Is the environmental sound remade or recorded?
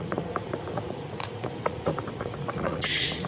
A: remade